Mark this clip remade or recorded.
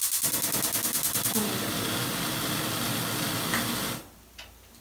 recorded